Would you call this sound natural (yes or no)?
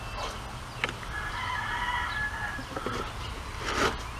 yes